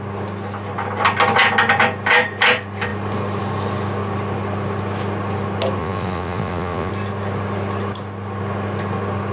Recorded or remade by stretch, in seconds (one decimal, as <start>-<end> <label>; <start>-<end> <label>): 0.0-5.8 recorded; 5.8-6.9 remade; 6.9-9.3 recorded